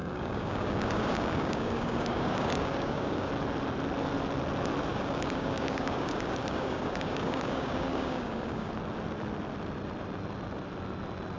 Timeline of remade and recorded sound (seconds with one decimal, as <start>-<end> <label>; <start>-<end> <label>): 0.0-3.3 remade; 3.3-4.9 recorded; 4.9-8.7 remade; 8.7-11.4 recorded